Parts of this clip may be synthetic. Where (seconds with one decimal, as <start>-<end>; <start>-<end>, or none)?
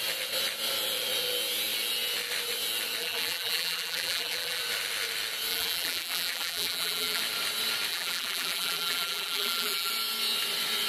3.0-4.6; 5.5-7.2; 7.9-9.9